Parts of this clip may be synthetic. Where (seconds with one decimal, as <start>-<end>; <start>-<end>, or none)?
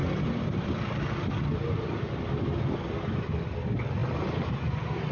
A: 0.0-5.1